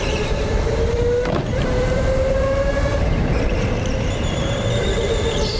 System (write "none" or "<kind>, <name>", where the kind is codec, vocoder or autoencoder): vocoder, BigVGAN v2